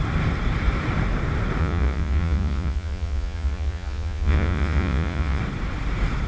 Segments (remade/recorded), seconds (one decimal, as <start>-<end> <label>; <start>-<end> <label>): 0.0-1.6 recorded; 1.6-5.4 remade; 5.4-6.3 recorded